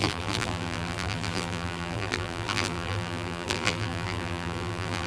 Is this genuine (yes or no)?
no